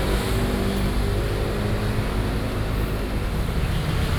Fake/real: real